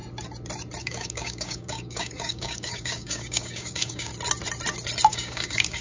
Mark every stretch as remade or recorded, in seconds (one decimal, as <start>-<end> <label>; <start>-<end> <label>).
0.0-0.8 recorded; 0.8-4.1 remade; 4.1-5.1 recorded; 5.1-5.8 remade